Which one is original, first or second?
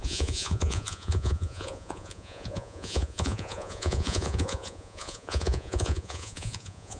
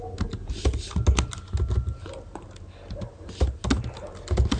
second